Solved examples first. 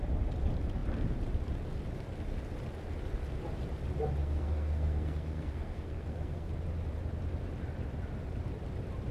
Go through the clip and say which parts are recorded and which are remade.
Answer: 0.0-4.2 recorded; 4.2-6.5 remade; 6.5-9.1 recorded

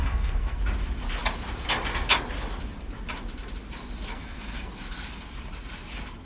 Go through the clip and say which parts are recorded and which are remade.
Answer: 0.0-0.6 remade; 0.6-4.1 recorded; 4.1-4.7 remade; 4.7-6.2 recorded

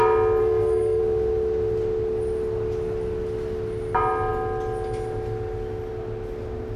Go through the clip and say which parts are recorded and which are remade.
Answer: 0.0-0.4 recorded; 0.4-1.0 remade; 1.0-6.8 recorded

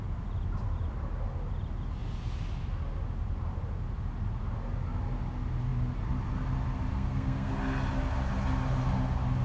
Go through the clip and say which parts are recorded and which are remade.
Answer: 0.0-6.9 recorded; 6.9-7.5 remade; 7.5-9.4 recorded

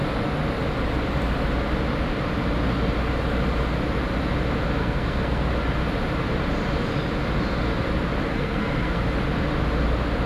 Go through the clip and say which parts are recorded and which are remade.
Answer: 0.0-4.8 recorded; 4.8-5.5 remade; 5.5-8.3 recorded; 8.3-9.0 remade; 9.0-10.3 recorded

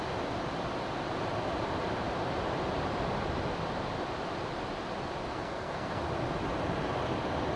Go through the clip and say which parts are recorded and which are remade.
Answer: 0.0-5.3 recorded; 5.3-6.0 remade; 6.0-7.6 recorded

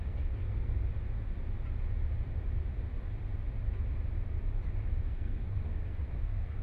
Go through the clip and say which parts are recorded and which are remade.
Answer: 0.0-0.9 remade; 0.9-4.9 recorded; 4.9-6.6 remade